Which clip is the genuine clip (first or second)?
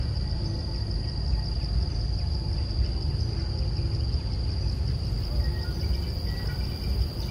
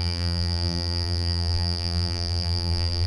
first